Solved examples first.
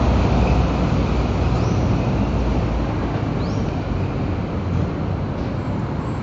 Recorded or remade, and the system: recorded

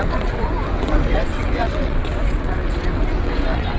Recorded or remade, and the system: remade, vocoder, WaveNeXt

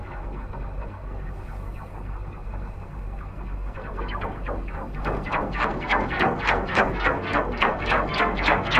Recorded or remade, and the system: remade, codec, SNAC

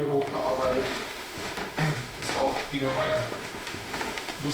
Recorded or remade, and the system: remade, autoencoder, DAC-VAE